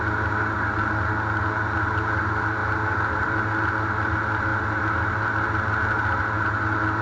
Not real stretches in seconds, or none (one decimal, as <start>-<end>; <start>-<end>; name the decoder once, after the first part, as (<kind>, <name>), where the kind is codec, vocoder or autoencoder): 2.6-3.4 (vocoder, BigVGAN v2)

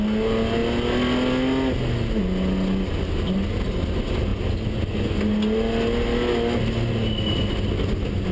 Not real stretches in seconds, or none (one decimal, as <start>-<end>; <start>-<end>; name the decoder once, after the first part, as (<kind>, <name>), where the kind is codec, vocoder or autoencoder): none

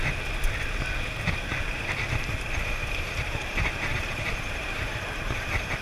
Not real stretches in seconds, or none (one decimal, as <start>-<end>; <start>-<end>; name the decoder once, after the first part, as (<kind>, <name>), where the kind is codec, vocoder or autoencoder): 2.1-5.8 (vocoder, BigVGAN v2)

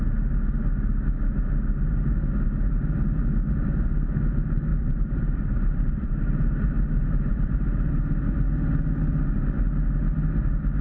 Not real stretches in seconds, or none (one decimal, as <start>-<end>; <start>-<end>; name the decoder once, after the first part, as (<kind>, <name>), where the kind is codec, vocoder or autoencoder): 4.7-7.9 (vocoder, BigVGAN v2)

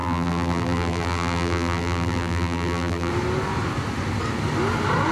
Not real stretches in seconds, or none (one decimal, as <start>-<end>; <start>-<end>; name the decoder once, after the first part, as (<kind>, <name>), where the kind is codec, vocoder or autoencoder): 0.0-3.1 (vocoder, BigVGAN v2)